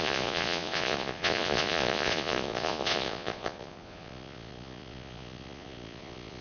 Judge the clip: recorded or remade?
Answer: remade